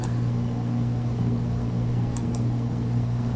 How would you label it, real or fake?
fake